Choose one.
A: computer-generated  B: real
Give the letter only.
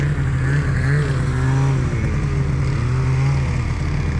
B